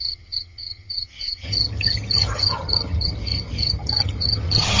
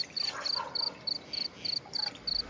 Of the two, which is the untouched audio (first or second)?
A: second